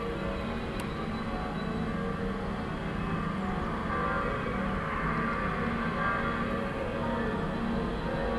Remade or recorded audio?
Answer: recorded